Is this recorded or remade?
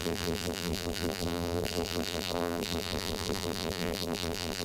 remade